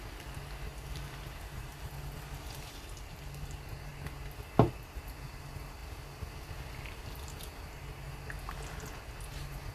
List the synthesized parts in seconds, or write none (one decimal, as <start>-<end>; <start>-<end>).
none